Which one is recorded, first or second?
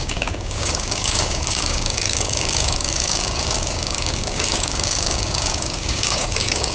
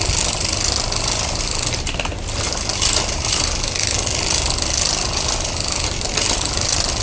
second